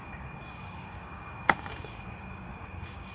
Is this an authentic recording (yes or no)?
no